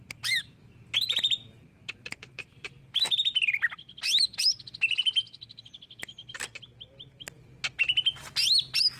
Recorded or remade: recorded